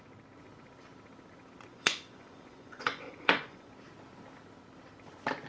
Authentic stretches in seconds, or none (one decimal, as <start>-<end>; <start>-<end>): 0.0-1.7; 3.7-5.5